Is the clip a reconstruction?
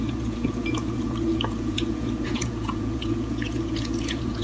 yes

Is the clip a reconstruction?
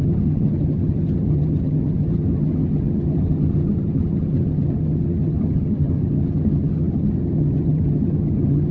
yes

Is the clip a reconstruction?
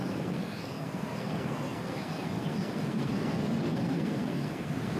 yes